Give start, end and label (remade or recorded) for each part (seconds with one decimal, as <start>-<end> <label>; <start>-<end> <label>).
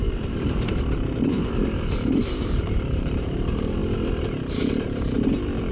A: 0.0-3.8 remade; 3.8-5.7 recorded